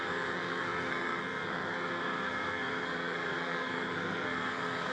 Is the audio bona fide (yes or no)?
no